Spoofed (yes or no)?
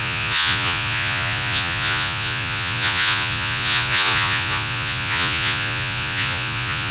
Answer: yes